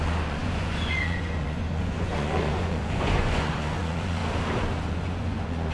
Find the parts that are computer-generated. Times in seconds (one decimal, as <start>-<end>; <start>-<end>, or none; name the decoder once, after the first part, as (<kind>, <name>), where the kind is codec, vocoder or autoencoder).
0.0-4.2 (vocoder, Vocos); 4.9-5.7